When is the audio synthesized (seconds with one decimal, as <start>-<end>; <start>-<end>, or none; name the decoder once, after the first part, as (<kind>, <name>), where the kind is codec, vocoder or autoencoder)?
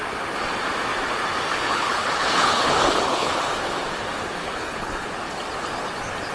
1.5-3.3 (codec, HILCodec); 4.4-5.1